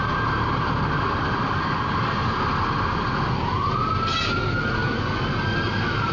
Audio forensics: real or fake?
real